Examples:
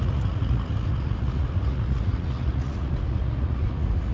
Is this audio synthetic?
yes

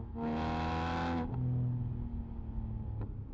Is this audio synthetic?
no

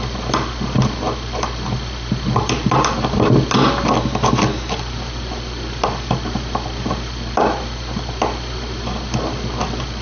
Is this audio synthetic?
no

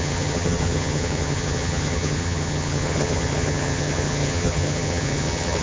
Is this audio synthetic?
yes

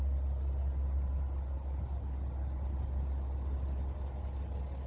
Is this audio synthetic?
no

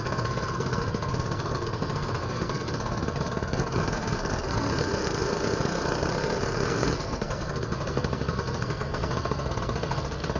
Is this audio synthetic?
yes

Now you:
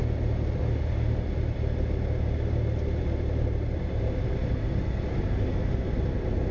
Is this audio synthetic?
no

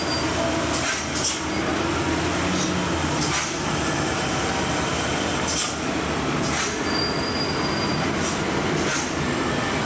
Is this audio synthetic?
no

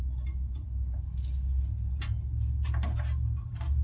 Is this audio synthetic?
no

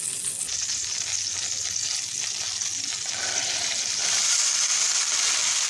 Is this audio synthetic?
no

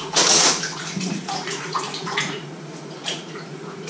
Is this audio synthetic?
yes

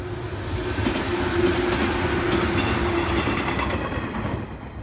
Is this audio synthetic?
no